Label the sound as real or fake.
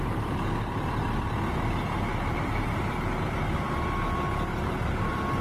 real